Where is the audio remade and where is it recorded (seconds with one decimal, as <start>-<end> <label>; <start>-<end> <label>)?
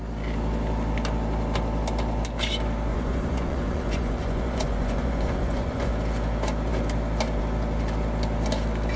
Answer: 0.0-2.9 recorded; 2.9-5.9 remade; 5.9-9.0 recorded